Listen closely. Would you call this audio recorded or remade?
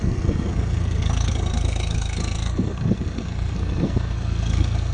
remade